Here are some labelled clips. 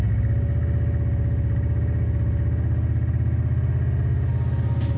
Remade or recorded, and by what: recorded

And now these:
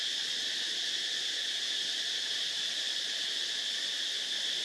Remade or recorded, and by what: recorded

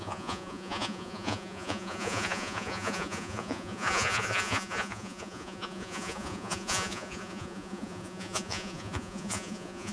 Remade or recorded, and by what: remade, vocoder, Vocos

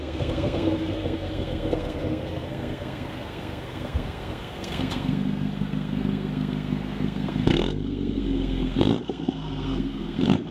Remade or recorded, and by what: remade, codec, SNAC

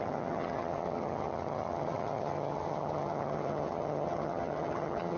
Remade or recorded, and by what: remade, vocoder, HiFi-GAN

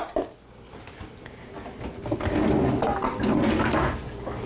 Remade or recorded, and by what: recorded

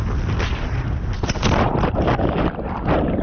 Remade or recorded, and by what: recorded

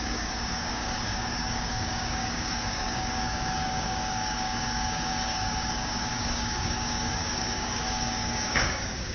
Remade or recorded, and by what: remade, codec, DAC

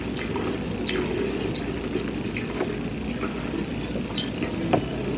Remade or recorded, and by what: recorded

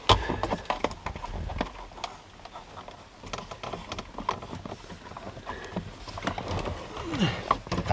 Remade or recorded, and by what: recorded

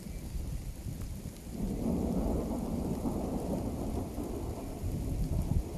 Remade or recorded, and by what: recorded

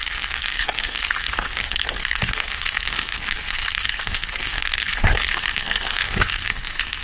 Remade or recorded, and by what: remade, codec, SNAC